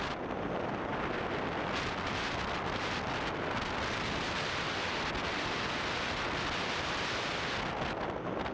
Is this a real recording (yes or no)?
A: yes